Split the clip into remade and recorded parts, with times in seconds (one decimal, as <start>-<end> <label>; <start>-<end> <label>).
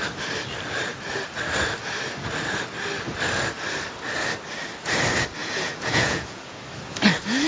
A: 0.0-5.4 recorded; 5.4-6.6 remade; 6.6-7.5 recorded